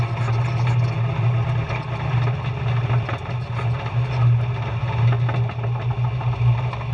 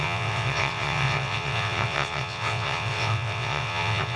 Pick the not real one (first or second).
second